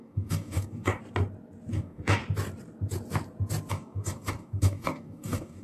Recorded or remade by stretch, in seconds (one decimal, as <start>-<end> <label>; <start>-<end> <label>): 0.0-1.0 remade; 1.0-1.7 recorded; 1.7-2.2 remade; 2.2-3.7 recorded; 3.7-5.6 remade

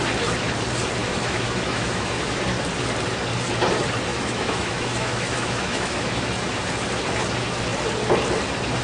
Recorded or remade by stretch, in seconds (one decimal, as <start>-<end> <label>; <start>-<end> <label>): 0.0-1.0 recorded; 1.0-2.4 remade; 2.4-4.1 recorded; 4.1-6.3 remade; 6.3-8.8 recorded

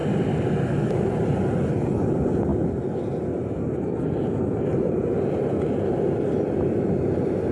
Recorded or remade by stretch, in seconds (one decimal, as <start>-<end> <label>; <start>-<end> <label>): 0.0-7.5 recorded

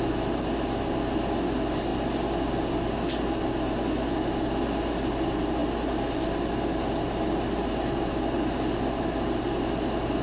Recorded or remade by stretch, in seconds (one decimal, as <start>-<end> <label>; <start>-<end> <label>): 0.0-10.2 recorded